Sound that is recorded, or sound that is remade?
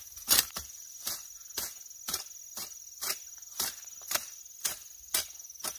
remade